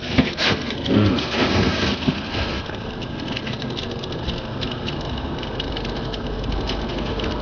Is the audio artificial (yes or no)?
yes